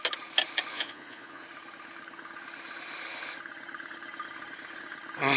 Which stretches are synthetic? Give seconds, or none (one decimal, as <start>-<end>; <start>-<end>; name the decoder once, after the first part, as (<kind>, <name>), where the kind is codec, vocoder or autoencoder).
0.7-1.4 (vocoder, Vocos)